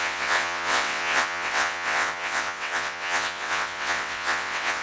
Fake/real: fake